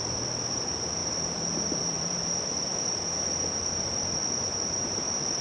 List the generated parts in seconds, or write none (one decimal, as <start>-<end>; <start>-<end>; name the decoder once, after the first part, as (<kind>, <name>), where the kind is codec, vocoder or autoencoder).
0.0-5.4 (vocoder, BigVGAN v2)